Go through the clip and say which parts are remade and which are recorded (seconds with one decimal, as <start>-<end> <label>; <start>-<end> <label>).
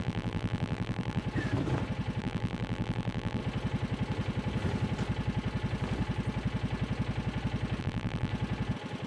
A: 0.0-1.2 remade; 1.2-2.2 recorded; 2.2-3.4 remade; 3.4-7.8 recorded; 7.8-8.3 remade; 8.3-9.1 recorded